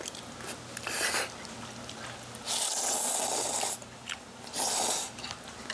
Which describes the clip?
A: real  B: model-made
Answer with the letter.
A